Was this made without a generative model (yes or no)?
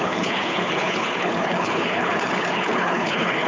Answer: no